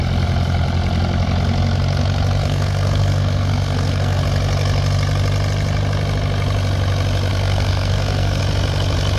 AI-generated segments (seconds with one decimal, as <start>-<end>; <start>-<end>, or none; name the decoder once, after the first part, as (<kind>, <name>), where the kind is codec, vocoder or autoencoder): 2.4-4.2 (codec, SNAC); 7.3-8.4